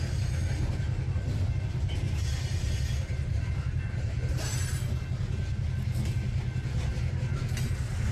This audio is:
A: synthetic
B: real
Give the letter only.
B